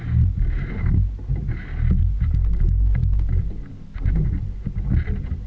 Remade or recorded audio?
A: recorded